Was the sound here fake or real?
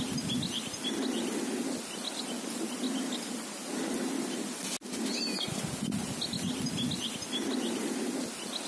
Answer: real